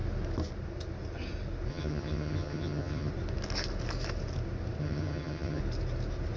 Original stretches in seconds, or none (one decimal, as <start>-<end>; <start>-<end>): 0.0-1.7; 3.1-4.8; 5.6-6.4